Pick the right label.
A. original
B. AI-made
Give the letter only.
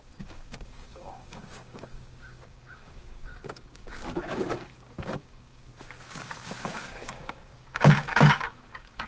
B